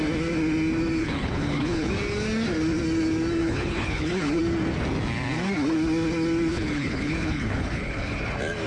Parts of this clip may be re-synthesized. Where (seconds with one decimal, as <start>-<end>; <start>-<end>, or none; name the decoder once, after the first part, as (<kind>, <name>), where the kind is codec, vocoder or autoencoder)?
1.0-1.9 (codec, HILCodec); 3.4-4.4; 6.5-8.2